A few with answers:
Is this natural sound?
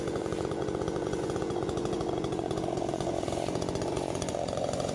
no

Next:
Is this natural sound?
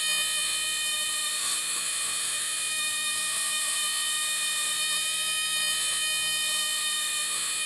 no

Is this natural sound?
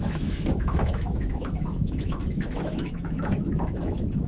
no